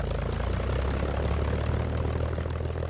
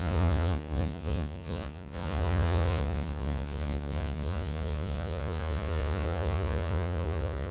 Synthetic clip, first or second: second